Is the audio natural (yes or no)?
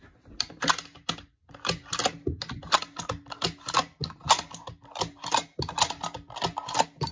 yes